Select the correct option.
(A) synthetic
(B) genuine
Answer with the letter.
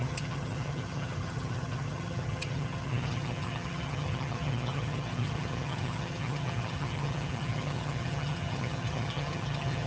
A